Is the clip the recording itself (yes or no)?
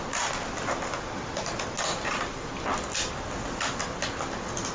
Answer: yes